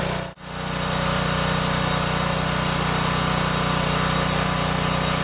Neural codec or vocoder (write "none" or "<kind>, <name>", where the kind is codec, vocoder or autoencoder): none